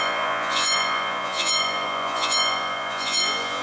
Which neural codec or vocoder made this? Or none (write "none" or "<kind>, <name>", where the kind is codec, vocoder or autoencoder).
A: vocoder, Vocos